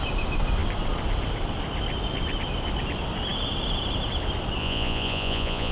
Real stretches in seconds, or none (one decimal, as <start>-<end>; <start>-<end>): 0.0-4.6